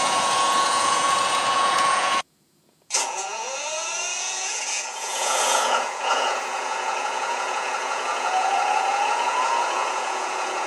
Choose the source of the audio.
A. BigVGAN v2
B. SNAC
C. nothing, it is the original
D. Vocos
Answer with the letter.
D